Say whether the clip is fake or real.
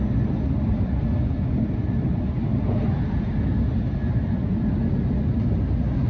real